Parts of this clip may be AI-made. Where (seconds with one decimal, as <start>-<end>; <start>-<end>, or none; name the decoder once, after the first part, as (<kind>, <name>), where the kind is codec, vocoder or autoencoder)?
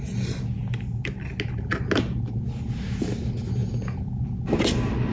3.6-4.1 (vocoder, Vocos)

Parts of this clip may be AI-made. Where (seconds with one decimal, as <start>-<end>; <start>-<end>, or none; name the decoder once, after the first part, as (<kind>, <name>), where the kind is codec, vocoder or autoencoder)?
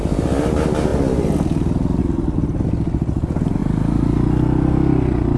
none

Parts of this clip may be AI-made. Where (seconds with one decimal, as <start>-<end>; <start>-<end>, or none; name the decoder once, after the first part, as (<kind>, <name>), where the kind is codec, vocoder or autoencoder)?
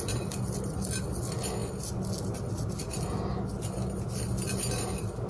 none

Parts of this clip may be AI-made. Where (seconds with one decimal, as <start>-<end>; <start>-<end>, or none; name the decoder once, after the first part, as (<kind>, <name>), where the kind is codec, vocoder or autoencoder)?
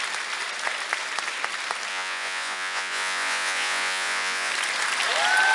1.9-4.5 (vocoder, Vocos)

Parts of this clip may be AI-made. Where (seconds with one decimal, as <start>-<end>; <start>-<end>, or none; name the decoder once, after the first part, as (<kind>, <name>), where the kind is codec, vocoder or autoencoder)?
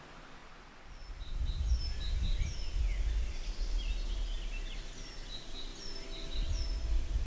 none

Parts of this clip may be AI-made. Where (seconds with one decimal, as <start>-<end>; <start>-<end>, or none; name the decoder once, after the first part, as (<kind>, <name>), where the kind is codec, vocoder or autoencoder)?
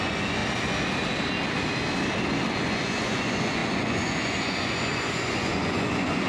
0.0-0.4 (vocoder, Vocos); 2.5-6.3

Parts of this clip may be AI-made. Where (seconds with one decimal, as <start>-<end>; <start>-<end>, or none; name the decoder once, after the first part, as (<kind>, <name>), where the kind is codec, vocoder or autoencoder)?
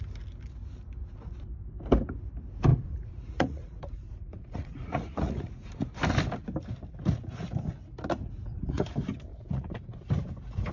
2.7-5.7 (vocoder, Vocos); 8.2-8.8; 9.3-10.0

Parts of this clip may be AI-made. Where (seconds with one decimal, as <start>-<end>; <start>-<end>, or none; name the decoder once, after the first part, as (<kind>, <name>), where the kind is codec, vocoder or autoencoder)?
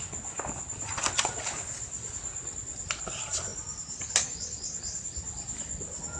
none